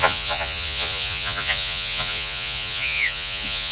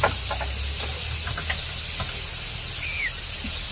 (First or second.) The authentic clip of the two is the second